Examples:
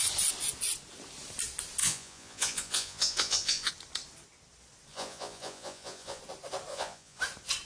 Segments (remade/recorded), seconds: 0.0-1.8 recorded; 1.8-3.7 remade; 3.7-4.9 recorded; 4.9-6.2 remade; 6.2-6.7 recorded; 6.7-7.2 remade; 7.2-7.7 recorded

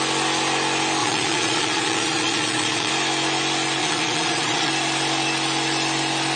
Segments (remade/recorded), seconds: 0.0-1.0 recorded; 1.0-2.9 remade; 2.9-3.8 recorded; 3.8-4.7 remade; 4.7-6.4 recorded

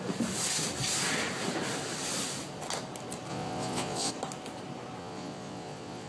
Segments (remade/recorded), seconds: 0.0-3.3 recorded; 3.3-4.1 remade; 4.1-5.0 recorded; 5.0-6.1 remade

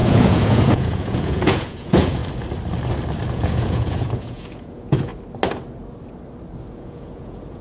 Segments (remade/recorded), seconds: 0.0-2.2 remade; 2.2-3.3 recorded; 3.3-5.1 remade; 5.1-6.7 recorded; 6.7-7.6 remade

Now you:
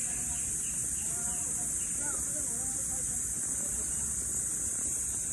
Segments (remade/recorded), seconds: 0.0-5.3 recorded

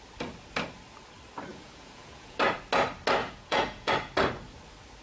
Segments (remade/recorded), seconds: 0.0-1.5 recorded; 1.5-2.4 remade; 2.4-3.2 recorded; 3.2-3.9 remade; 3.9-5.0 recorded

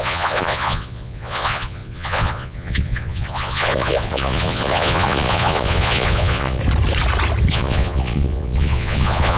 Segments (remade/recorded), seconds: 0.0-6.6 remade; 6.6-7.5 recorded; 7.5-9.4 remade